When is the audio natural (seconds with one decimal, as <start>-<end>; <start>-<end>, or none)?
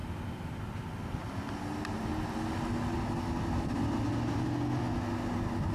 0.0-5.7